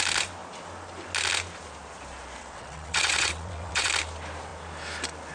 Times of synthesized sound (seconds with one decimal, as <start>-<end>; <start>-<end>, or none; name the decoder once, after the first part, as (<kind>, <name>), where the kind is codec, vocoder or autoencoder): 2.4-3.9 (vocoder, WaveNeXt)